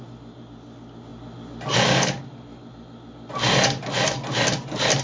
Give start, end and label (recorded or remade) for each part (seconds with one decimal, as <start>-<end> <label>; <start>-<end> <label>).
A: 0.0-5.0 recorded